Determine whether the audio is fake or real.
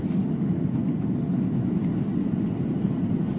real